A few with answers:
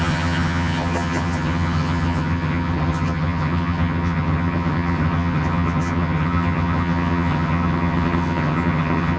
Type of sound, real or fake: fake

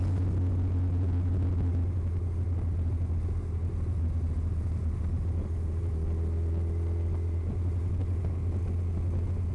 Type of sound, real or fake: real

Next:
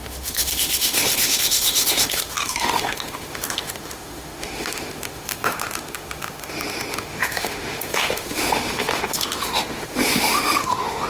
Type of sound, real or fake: fake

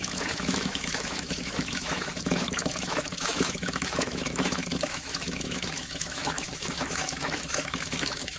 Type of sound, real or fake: fake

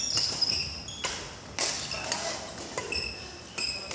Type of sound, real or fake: real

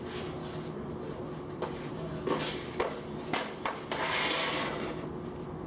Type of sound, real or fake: real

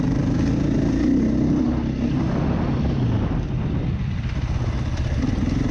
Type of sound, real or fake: real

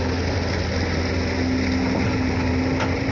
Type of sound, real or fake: real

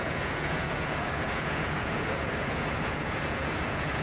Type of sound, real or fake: fake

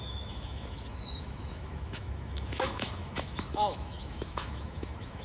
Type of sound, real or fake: fake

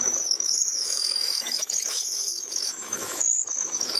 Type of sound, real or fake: fake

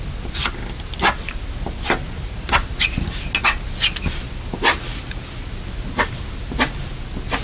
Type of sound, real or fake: real